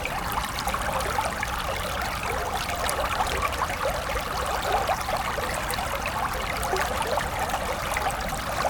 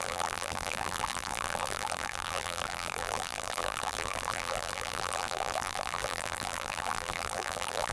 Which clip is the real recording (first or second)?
first